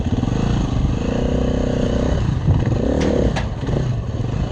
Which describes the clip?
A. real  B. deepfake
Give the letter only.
A